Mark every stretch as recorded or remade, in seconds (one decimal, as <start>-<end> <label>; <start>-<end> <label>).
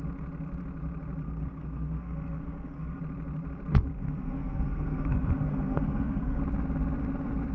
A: 0.0-1.2 recorded; 1.2-3.0 remade; 3.0-3.9 recorded; 3.9-6.4 remade; 6.4-7.5 recorded